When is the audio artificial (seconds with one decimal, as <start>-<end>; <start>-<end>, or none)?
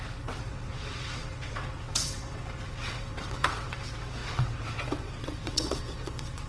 0.0-6.5